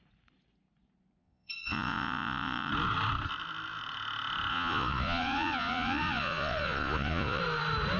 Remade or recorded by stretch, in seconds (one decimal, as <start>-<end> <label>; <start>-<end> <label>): 0.0-1.2 recorded; 1.2-2.7 remade; 2.7-4.5 recorded; 4.5-7.4 remade; 7.4-8.0 recorded